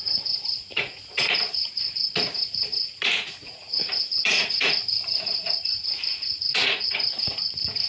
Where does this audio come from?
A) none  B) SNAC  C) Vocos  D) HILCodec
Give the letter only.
C